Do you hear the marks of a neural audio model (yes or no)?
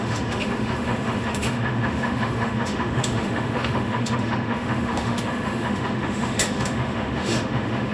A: yes